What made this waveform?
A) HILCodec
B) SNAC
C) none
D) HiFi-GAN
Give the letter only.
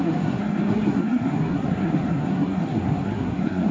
B